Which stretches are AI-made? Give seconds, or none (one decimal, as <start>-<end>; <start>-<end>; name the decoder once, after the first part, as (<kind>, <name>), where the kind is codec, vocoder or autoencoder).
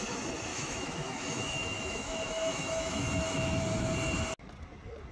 0.5-3.6 (autoencoder, DAC-VAE)